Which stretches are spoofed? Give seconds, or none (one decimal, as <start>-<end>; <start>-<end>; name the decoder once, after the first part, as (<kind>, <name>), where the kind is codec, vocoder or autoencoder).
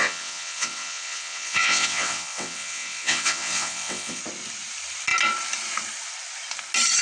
0.0-4.2 (vocoder, WaveNeXt)